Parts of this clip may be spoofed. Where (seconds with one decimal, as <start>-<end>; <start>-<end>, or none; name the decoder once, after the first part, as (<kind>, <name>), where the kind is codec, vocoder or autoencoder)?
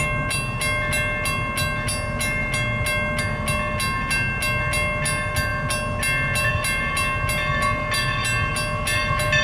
none